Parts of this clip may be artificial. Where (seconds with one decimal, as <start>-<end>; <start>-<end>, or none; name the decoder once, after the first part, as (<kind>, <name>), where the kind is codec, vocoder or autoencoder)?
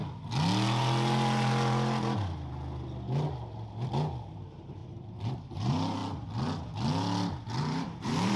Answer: 4.3-6.0 (vocoder, BigVGAN v2); 7.6-8.4